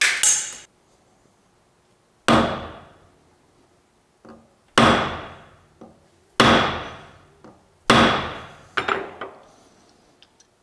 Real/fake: real